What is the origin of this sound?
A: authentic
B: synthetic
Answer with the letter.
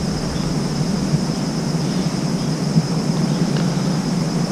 A